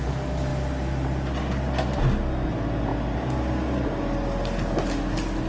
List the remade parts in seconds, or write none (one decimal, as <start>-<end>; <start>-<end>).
none